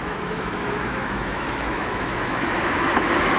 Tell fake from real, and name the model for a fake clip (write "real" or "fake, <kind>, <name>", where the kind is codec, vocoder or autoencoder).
fake, autoencoder, DAC-VAE